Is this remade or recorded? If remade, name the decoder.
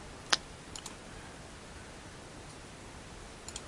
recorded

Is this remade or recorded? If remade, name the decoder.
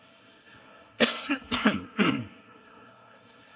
remade, codec, SNAC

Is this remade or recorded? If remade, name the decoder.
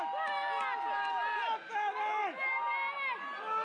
recorded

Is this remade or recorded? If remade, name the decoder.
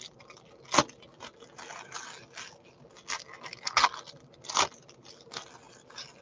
recorded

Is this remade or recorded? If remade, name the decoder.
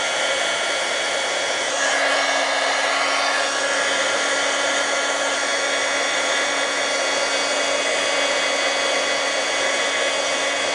recorded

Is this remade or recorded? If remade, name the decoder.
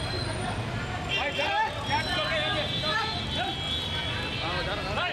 recorded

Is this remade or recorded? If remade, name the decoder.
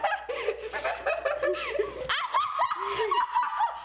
recorded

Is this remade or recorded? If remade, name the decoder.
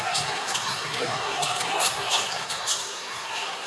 remade, codec, SNAC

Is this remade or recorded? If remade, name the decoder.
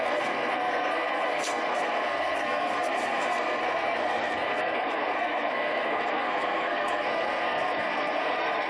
remade, codec, SNAC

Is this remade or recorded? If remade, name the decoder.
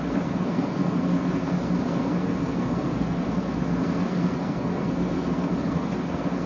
remade, codec, SNAC